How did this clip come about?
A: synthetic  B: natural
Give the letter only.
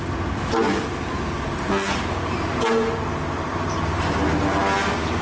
B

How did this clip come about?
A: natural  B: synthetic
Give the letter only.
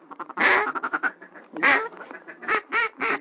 B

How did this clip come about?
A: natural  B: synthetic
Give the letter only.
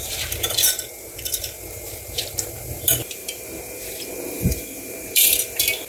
B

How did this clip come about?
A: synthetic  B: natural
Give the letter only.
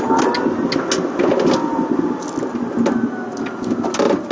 B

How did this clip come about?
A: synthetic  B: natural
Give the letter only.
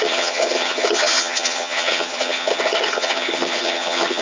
A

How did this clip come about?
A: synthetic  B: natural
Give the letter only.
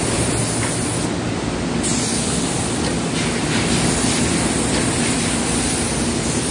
B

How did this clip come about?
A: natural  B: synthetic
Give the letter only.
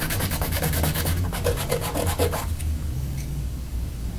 B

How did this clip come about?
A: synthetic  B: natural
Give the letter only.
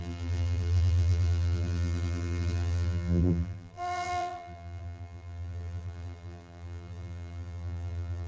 A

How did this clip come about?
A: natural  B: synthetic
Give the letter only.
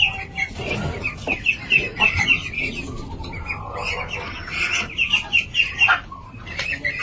A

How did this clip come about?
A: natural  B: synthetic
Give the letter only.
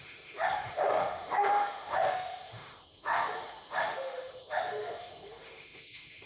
B